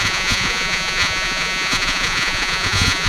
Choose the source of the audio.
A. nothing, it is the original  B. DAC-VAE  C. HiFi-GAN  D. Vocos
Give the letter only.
D